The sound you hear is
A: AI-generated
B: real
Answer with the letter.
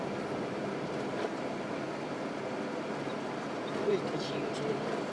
B